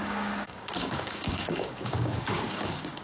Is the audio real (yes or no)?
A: no